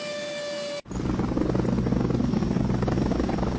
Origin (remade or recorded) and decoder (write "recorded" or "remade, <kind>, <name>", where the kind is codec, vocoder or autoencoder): recorded